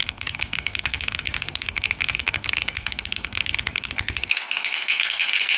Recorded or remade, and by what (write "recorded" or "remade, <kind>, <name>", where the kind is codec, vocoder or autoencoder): remade, codec, SNAC